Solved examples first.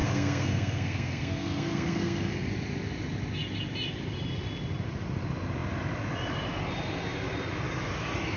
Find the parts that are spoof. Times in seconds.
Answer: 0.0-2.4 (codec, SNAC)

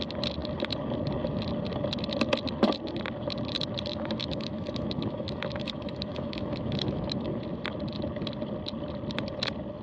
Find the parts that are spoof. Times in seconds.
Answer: 3.9-7.4 (autoencoder, DAC-VAE)

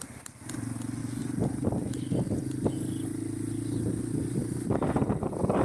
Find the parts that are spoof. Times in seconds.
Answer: none

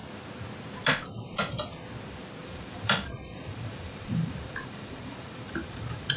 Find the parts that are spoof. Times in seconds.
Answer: 2.4-6.2 (vocoder, BigVGAN v2)

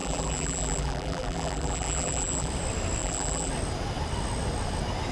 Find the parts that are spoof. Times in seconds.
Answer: 0.0-2.5 (vocoder, BigVGAN v2); 3.0-3.5

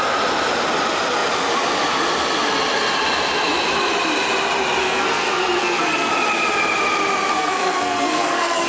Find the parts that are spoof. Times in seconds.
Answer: 4.8-6.1 (codec, SNAC); 7.3-8.7